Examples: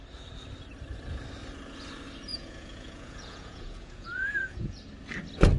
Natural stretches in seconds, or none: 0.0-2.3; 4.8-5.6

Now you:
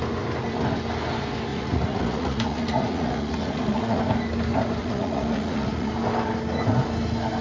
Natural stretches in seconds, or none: 0.0-1.5; 4.0-4.8; 5.9-7.4